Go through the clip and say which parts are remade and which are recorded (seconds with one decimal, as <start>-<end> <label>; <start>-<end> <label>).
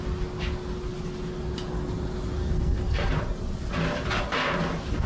0.0-2.4 recorded; 2.4-3.1 remade; 3.1-5.1 recorded